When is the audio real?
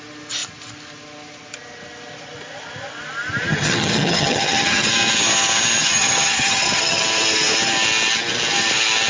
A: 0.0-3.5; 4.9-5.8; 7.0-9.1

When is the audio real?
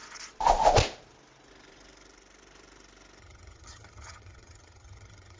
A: 0.0-3.2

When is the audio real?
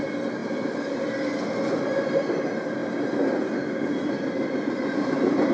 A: 0.0-5.5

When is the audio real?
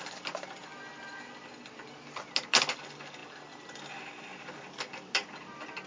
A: 0.0-5.9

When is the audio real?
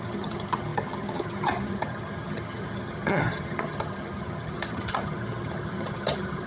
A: none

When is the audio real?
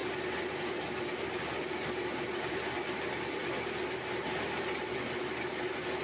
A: 0.0-6.0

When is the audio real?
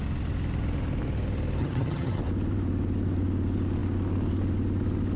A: 0.0-1.6; 2.2-5.2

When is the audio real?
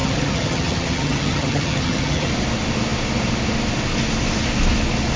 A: 2.3-5.2